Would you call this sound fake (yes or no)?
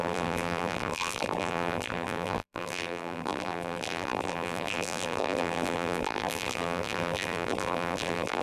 yes